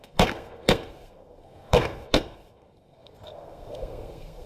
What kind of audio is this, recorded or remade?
remade